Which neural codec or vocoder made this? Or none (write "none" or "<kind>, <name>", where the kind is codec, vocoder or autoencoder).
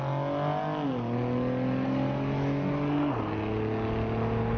none